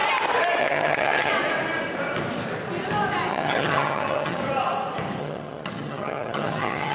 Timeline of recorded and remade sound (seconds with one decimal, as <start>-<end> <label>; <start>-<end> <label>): 0.0-0.6 recorded; 0.6-1.3 remade; 1.3-3.3 recorded; 3.3-4.4 remade; 4.4-5.2 recorded; 5.2-6.9 remade